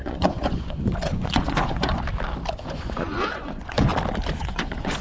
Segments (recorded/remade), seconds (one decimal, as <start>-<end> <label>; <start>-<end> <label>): 0.0-1.9 remade; 1.9-2.7 recorded; 2.7-3.9 remade; 3.9-4.4 recorded; 4.4-5.0 remade